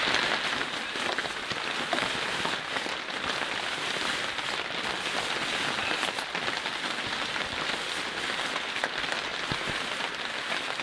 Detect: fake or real real